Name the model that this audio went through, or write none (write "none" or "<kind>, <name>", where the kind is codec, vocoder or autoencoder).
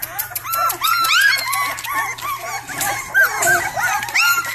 none